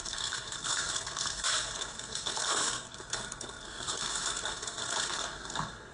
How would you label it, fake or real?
fake